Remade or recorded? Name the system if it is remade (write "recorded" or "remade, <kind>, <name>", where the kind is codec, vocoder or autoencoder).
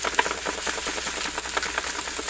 recorded